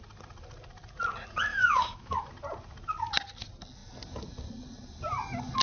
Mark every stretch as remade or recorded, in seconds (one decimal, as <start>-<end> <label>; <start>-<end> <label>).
0.0-1.5 recorded; 1.5-2.3 remade; 2.3-5.6 recorded